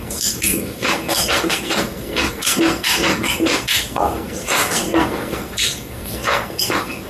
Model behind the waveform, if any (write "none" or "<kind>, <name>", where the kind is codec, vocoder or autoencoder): codec, SNAC